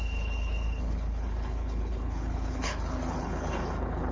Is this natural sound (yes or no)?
no